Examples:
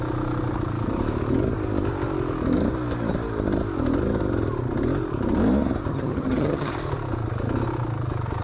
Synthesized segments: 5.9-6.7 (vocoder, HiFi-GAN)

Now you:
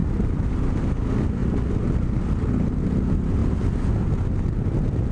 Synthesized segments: none

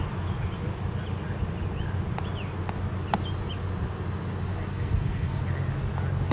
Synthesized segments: 4.7-5.4 (codec, SNAC)

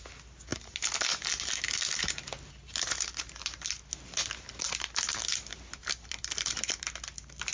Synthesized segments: none

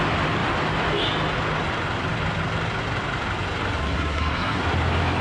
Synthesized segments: 3.8-4.6 (codec, SNAC)

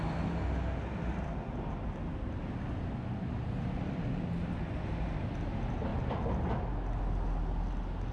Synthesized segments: none

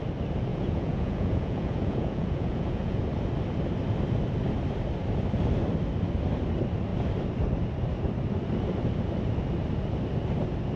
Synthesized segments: 0.5-3.0 (vocoder, Vocos)